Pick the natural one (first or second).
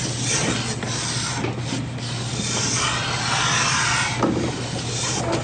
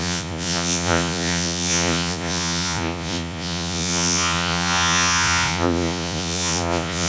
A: first